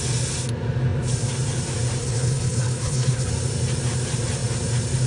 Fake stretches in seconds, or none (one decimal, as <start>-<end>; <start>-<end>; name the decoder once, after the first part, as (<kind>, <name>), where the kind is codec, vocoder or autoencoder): 2.0-3.3 (codec, HILCodec)